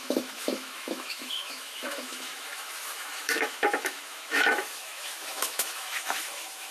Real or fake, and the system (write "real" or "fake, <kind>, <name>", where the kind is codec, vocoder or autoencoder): fake, autoencoder, DAC-VAE